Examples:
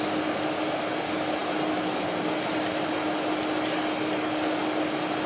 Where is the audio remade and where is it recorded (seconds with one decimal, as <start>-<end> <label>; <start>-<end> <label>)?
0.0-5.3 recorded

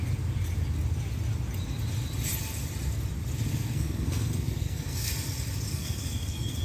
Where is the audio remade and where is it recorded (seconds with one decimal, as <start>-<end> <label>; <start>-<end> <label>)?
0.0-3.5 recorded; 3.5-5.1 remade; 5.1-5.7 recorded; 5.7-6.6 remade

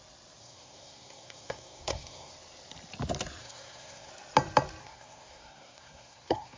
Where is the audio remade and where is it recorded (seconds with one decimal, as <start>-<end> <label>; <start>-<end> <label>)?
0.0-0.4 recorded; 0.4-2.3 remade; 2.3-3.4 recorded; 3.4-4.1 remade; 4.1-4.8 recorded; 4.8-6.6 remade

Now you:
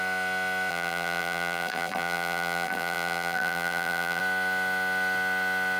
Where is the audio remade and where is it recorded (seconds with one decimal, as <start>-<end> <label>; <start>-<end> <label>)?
0.0-0.7 recorded; 0.7-4.2 remade; 4.2-5.8 recorded